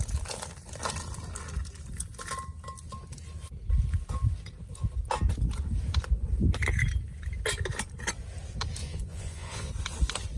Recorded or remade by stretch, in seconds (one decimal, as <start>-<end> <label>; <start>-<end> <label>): 0.0-8.8 recorded; 8.8-9.7 remade; 9.7-10.4 recorded